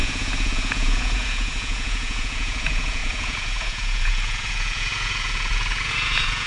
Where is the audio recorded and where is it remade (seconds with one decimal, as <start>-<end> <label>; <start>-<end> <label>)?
0.0-6.5 remade